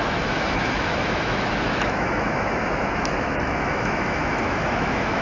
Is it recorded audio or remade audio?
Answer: remade